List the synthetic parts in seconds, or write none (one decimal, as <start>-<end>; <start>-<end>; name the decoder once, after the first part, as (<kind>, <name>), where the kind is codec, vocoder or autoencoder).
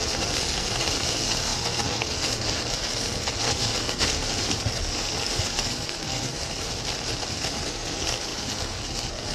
0.0-6.7 (codec, SNAC); 7.3-9.3